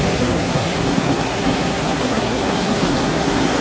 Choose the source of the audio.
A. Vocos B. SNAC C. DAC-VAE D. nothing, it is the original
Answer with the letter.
B